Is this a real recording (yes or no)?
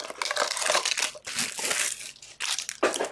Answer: yes